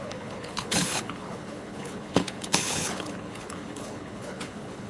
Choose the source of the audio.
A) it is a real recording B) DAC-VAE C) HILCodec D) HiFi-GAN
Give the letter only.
C